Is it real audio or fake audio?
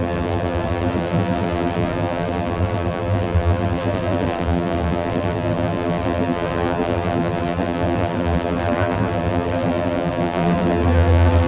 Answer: fake